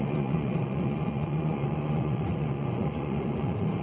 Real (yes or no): no